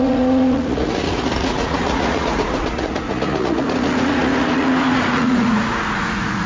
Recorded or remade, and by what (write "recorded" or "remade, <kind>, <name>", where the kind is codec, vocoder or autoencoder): remade, vocoder, Vocos